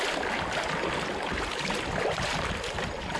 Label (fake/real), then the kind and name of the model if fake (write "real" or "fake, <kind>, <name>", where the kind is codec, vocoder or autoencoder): real